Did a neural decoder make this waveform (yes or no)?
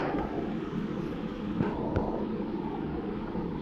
yes